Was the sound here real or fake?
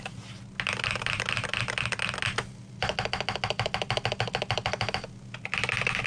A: real